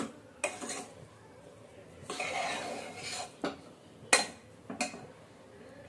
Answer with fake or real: real